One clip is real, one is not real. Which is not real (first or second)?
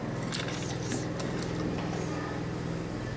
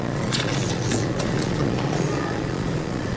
second